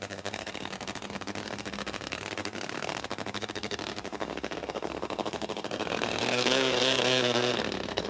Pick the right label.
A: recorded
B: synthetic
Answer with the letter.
B